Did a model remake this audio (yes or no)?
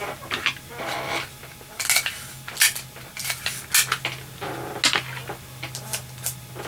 no